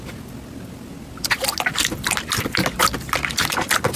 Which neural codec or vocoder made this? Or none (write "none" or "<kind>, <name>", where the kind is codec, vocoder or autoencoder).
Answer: none